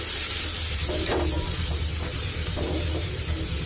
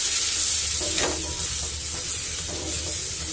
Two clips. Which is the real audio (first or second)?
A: second